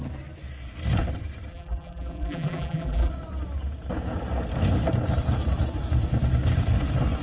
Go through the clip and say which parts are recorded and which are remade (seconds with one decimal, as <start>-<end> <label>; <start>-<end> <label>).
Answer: 0.0-1.5 recorded; 1.5-3.1 remade; 3.1-7.2 recorded